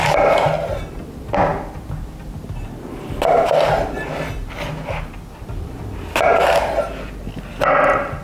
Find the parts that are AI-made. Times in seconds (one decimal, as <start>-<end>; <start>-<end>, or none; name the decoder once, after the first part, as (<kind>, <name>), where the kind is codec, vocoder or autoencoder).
none